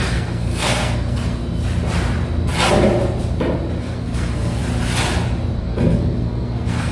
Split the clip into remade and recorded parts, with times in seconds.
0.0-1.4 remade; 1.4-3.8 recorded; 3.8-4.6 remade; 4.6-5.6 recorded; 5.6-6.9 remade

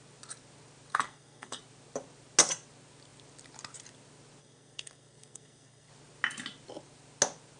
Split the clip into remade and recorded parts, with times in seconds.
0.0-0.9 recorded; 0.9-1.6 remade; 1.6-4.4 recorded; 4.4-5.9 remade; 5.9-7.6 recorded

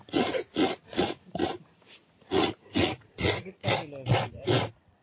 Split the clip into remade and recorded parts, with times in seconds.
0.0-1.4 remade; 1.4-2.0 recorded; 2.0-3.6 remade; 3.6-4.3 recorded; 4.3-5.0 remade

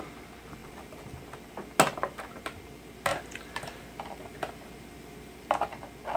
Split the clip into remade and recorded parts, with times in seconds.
0.0-0.6 recorded; 0.6-1.5 remade; 1.5-3.1 recorded; 3.1-5.5 remade; 5.5-6.2 recorded

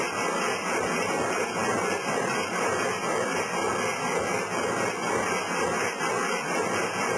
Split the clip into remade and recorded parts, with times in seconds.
0.0-7.2 recorded

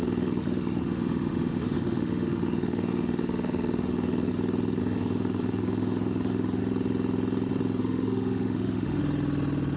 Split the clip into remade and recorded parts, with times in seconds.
0.0-4.3 remade; 4.3-4.8 recorded; 4.8-6.6 remade; 6.6-7.8 recorded; 7.8-9.0 remade; 9.0-9.8 recorded